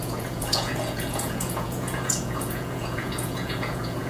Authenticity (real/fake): fake